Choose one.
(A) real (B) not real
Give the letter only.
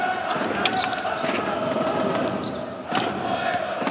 A